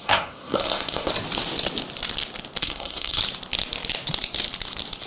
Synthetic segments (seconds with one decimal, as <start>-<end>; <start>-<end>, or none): 0.0-1.1; 2.6-3.2